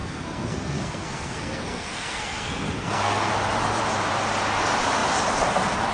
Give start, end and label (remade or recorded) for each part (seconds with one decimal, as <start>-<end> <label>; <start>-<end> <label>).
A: 0.0-3.3 remade; 3.3-5.9 recorded